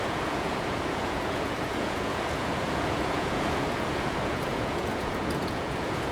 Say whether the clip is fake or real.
fake